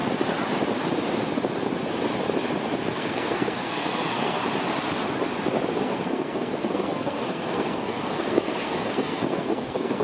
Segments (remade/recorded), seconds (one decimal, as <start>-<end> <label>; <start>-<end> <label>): 0.0-2.9 recorded; 2.9-4.4 remade; 4.4-5.8 recorded; 5.8-10.0 remade